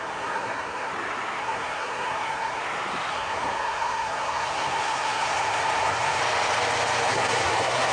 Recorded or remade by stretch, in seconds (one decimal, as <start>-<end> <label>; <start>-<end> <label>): 0.0-0.9 remade; 0.9-1.4 recorded; 1.4-2.6 remade; 2.6-3.1 recorded; 3.1-6.2 remade; 6.2-7.1 recorded; 7.1-7.9 remade